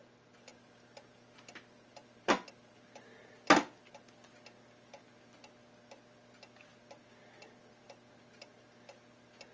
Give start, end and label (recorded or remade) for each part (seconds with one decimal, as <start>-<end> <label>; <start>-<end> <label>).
0.0-9.5 recorded